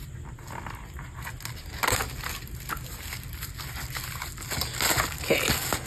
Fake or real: real